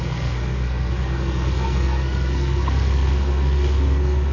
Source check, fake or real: fake